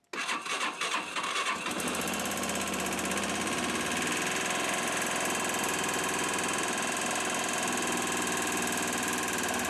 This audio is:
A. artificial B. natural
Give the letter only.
B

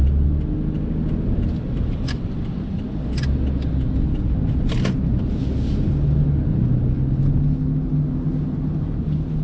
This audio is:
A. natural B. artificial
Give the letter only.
A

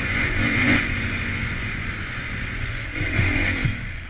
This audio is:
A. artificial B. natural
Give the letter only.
A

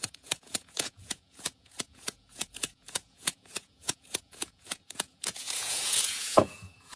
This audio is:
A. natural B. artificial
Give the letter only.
B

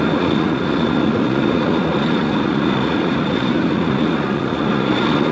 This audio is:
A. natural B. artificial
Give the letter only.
B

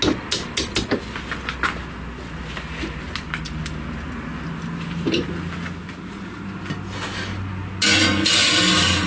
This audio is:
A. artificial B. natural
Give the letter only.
B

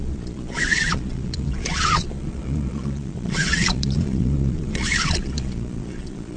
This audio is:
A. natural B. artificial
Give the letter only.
B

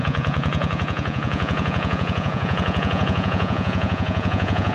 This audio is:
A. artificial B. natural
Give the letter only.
A